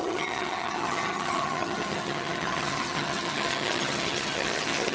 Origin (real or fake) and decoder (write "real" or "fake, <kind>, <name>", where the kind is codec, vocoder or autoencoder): fake, vocoder, HiFi-GAN